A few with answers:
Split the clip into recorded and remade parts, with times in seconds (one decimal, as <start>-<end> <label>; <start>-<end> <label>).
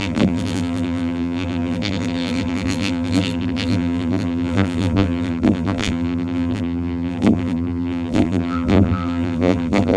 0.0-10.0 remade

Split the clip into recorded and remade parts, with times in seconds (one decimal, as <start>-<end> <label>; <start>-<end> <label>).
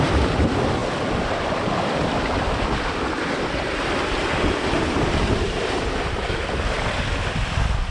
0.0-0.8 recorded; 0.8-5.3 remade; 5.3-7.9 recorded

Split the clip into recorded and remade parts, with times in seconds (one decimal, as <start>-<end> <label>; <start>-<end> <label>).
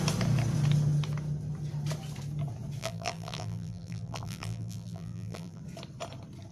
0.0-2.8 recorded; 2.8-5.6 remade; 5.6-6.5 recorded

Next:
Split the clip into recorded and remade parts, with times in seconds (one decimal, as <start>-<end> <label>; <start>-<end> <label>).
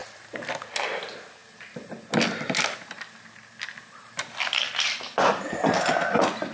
0.0-0.6 remade; 0.6-1.4 recorded; 1.4-5.3 remade; 5.3-6.5 recorded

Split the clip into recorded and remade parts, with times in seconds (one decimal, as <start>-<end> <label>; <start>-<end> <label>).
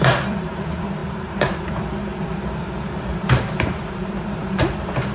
0.0-5.1 remade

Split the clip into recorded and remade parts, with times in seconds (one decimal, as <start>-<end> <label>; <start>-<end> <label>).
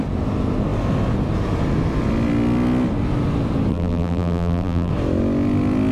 0.0-3.7 recorded; 3.7-4.9 remade; 4.9-5.9 recorded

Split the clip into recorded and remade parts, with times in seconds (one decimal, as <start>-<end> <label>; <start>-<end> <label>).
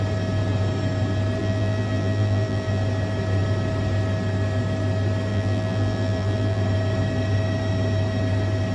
0.0-1.4 recorded; 1.4-2.8 remade; 2.8-5.3 recorded; 5.3-6.6 remade; 6.6-8.7 recorded